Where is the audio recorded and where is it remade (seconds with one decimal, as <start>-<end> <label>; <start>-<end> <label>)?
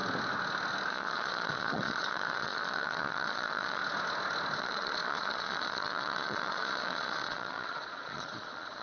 0.0-0.9 recorded; 0.9-3.8 remade; 3.8-4.6 recorded; 4.6-8.8 remade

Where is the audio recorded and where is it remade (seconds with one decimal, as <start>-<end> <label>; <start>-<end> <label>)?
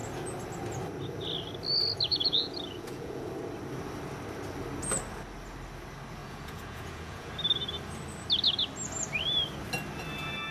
0.0-2.1 recorded; 2.1-3.3 remade; 3.3-6.2 recorded; 6.2-7.3 remade; 7.3-10.5 recorded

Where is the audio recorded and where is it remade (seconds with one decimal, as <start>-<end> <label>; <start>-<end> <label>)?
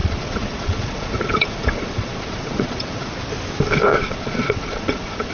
0.0-3.1 remade; 3.1-3.9 recorded; 3.9-5.3 remade